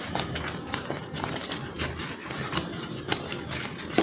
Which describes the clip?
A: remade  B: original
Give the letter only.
A